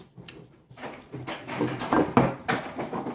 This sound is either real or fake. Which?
real